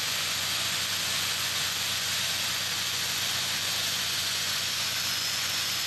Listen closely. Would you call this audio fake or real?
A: fake